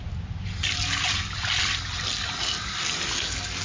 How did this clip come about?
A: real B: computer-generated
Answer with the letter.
A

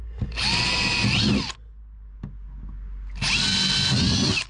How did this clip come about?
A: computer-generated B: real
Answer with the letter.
B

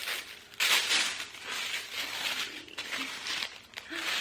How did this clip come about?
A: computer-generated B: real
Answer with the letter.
B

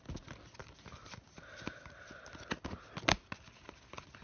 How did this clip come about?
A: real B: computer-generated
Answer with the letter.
A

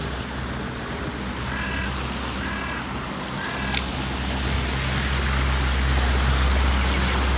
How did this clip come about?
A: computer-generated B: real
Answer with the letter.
B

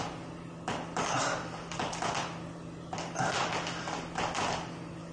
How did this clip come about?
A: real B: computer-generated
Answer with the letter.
A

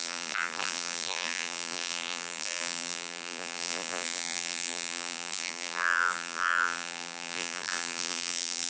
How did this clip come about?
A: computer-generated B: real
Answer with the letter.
A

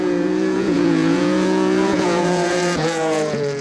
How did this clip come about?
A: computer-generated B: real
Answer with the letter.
A